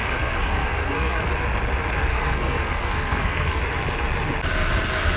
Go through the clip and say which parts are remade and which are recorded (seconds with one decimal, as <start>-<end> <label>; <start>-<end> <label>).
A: 0.0-1.3 remade; 1.3-2.1 recorded; 2.1-3.6 remade; 3.6-5.2 recorded